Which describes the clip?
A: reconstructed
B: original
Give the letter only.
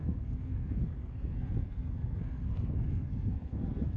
A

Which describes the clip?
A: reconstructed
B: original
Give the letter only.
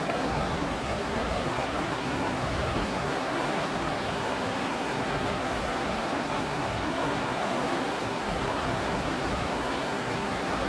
A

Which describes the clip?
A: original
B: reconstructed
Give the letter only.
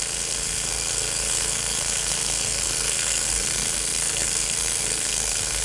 B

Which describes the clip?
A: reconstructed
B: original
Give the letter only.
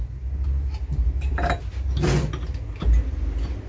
B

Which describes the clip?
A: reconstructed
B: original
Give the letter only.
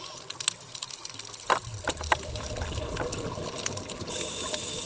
B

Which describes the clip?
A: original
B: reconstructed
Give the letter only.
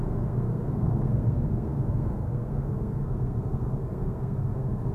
B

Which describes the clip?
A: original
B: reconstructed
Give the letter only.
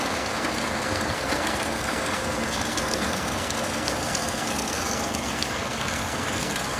B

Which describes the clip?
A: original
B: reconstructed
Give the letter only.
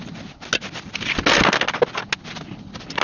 A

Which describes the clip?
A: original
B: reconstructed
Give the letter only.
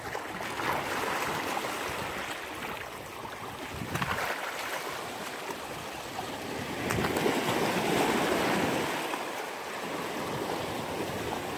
A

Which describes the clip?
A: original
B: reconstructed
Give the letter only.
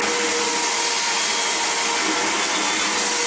A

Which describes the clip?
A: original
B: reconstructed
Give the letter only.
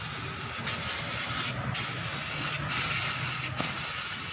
A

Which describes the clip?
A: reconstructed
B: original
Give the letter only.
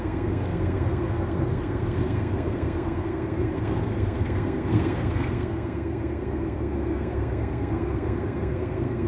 A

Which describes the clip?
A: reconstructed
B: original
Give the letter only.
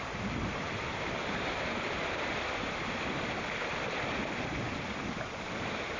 B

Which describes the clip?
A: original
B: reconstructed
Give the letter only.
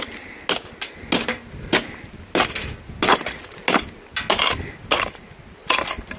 A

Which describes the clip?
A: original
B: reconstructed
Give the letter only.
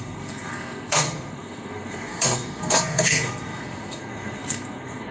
B